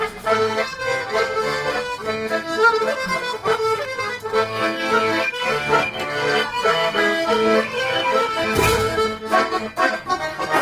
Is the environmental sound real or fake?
fake